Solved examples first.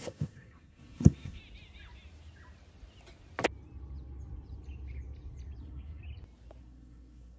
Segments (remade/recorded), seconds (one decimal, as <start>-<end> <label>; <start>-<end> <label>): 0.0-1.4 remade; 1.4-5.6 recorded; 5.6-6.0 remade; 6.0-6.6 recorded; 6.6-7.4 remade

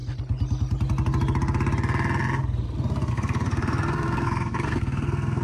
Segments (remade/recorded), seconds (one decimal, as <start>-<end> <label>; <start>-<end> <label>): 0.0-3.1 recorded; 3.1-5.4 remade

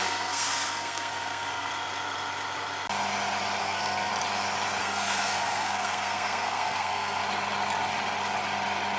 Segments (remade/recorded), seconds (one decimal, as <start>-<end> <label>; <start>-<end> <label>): 0.0-1.7 remade; 1.7-3.6 recorded; 3.6-4.1 remade; 4.1-4.8 recorded; 4.8-7.2 remade; 7.2-9.0 recorded

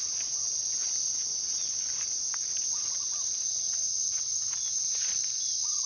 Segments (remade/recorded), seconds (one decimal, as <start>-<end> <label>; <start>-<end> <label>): 0.0-5.9 recorded